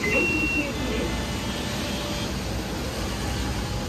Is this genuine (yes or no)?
yes